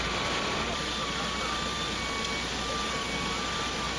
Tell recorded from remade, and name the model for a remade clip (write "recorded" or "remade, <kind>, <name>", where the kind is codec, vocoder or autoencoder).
recorded